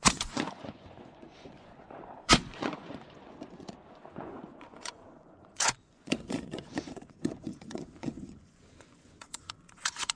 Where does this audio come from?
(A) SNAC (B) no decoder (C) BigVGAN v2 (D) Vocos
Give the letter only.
D